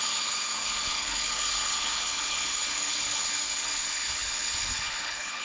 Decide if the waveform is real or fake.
fake